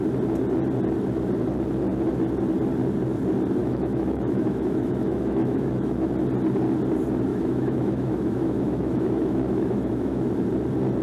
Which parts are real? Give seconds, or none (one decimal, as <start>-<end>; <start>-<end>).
0.0-3.6; 6.1-7.3; 10.3-11.0